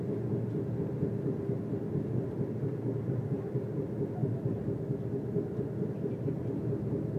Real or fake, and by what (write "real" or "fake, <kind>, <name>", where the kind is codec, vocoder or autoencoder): real